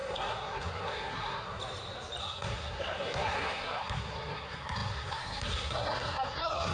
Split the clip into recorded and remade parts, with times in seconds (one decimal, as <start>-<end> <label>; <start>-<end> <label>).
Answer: 0.0-1.6 remade; 1.6-2.2 recorded; 2.2-6.7 remade